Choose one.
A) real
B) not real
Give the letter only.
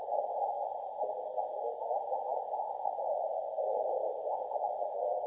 A